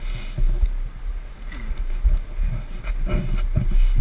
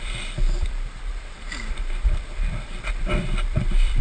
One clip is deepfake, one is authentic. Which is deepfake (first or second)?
second